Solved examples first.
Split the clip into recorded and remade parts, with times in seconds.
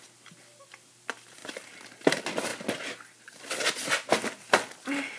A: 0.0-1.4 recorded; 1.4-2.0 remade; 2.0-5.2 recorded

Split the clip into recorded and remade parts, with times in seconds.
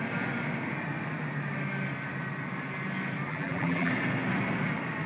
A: 0.0-3.3 recorded; 3.3-3.9 remade; 3.9-5.1 recorded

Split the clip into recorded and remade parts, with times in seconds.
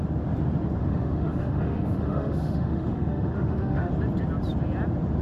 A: 0.0-0.8 recorded; 0.8-3.9 remade; 3.9-5.2 recorded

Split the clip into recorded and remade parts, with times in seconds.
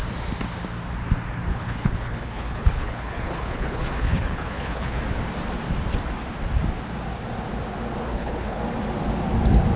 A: 0.0-1.5 recorded; 1.5-5.0 remade; 5.0-8.1 recorded; 8.1-8.6 remade; 8.6-9.8 recorded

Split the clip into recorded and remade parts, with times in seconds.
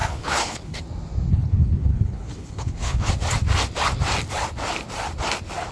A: 0.0-0.8 remade; 0.8-1.3 recorded; 1.3-3.1 remade; 3.1-5.7 recorded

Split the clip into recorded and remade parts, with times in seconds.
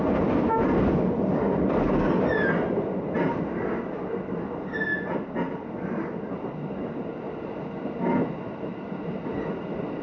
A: 0.0-10.0 recorded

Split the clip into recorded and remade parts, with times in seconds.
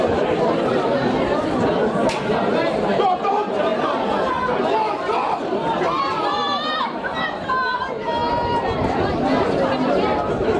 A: 0.0-3.7 remade; 3.7-4.3 recorded; 4.3-8.2 remade; 8.2-9.4 recorded; 9.4-10.6 remade